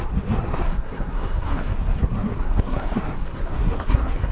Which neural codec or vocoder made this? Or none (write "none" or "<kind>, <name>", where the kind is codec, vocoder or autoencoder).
codec, SNAC